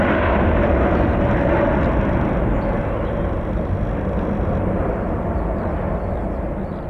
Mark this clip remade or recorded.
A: recorded